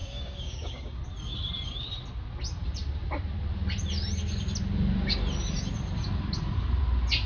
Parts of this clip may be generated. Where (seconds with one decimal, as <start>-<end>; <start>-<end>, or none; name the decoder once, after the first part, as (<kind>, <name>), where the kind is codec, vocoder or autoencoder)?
0.0-1.0 (codec, DAC)